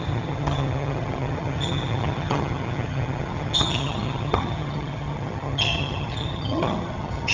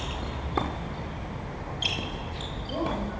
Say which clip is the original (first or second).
second